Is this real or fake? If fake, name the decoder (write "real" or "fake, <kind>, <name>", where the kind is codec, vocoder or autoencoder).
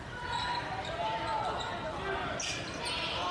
real